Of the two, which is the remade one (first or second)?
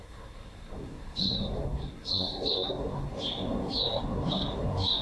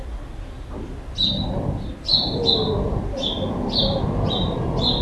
first